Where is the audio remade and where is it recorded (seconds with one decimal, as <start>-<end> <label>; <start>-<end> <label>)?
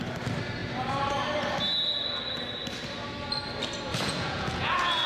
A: 0.0-3.9 recorded; 3.9-5.1 remade